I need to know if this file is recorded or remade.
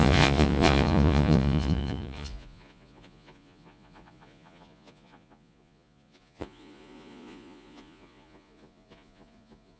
remade